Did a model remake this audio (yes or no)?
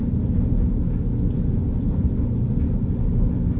no